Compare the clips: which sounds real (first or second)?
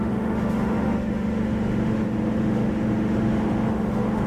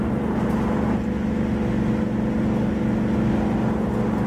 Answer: second